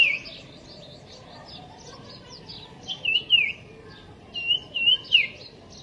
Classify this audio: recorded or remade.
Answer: recorded